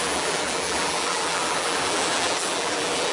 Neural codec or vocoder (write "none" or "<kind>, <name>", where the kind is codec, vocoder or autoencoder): vocoder, BigVGAN v2